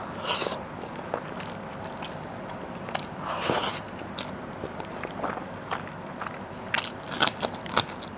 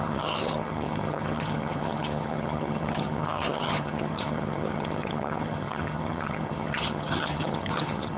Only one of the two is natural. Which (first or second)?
first